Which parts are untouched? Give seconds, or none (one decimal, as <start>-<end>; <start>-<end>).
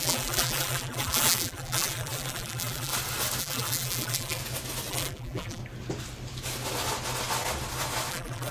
2.9-3.4; 4.4-4.9; 5.6-8.1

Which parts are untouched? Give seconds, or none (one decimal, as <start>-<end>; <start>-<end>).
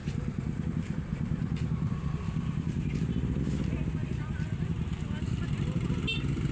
3.4-4.0; 4.7-6.5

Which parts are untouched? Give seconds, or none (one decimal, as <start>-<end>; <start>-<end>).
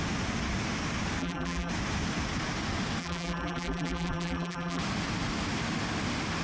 0.0-1.2; 1.7-3.0; 4.8-6.4